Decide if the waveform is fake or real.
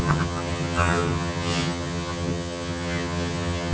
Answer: fake